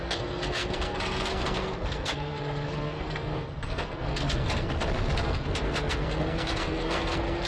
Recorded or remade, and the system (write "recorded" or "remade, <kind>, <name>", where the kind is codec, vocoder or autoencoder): remade, codec, SNAC